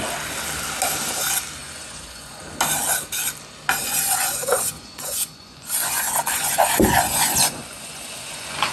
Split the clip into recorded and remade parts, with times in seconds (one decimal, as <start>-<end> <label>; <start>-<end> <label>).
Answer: 0.0-1.6 recorded; 1.6-2.4 remade; 2.4-3.8 recorded; 3.8-8.7 remade